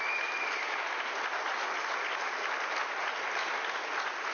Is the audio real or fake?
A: real